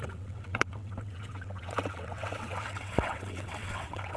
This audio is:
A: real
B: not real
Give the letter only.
B